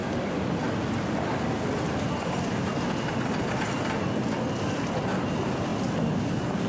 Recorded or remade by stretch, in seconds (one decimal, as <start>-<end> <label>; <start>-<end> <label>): 0.0-0.8 remade; 0.8-6.7 recorded